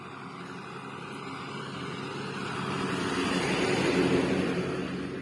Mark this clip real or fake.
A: real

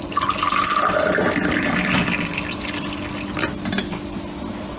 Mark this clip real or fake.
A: real